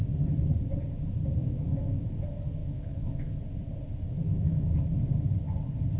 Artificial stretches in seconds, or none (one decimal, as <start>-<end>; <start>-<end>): 1.4-2.0; 2.6-3.4; 4.3-4.8